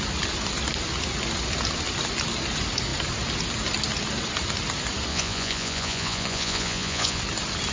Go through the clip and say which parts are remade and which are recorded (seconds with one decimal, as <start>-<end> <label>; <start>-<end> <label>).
0.0-5.1 recorded; 5.1-7.2 remade; 7.2-7.7 recorded